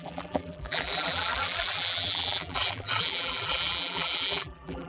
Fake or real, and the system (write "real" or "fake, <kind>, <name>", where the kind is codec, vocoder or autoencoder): fake, vocoder, BigVGAN v2